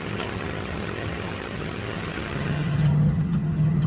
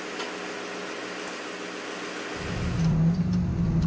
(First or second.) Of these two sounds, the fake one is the first